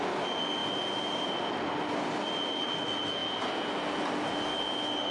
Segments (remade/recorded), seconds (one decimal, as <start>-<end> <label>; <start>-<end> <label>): 0.0-5.1 recorded